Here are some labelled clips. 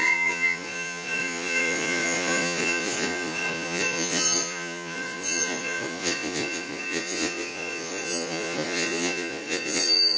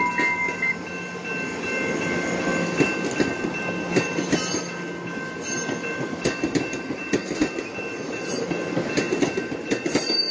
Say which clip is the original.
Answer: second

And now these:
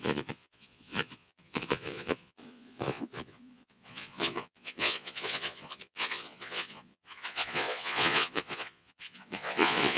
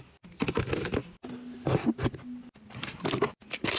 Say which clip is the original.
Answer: second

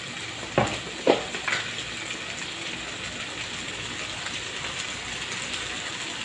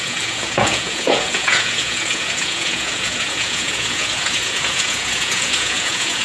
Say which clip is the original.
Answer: first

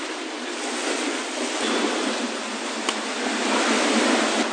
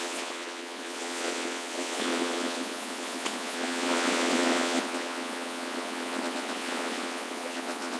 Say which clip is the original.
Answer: first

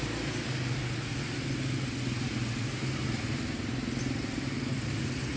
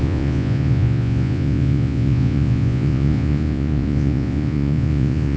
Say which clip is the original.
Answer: first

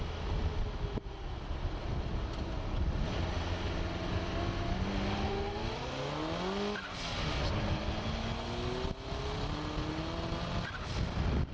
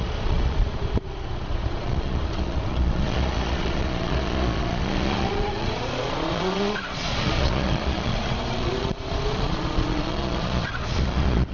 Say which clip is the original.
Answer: first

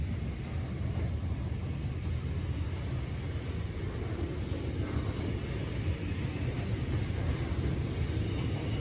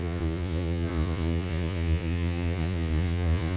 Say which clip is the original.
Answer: first